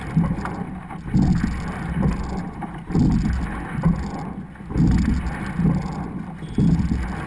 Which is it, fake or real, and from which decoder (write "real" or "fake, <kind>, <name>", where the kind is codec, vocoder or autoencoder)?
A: real